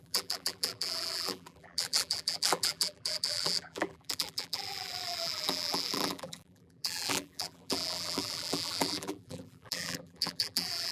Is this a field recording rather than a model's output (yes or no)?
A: no